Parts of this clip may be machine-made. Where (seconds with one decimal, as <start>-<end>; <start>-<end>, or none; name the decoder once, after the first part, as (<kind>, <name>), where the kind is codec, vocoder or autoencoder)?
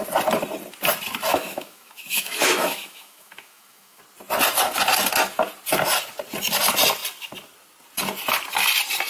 1.3-4.0 (autoencoder, DAC-VAE)